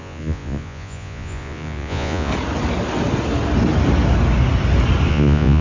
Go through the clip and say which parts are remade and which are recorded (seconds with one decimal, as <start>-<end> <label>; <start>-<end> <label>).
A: 0.0-2.3 remade; 2.3-5.1 recorded; 5.1-5.6 remade